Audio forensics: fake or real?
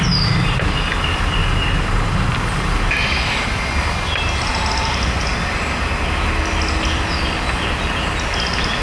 real